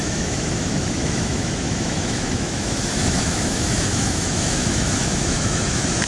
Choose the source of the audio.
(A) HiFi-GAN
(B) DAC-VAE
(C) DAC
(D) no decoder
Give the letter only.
B